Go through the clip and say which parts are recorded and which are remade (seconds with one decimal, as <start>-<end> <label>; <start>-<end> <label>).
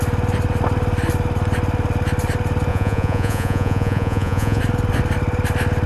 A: 0.0-2.7 recorded; 2.7-4.6 remade; 4.6-5.9 recorded